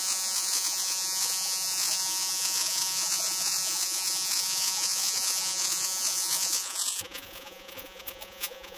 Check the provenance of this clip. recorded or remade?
remade